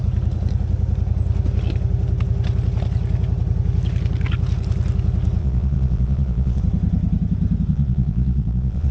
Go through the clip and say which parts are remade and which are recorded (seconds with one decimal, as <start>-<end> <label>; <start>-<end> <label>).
0.0-5.4 recorded; 5.4-6.6 remade; 6.6-7.7 recorded; 7.7-8.9 remade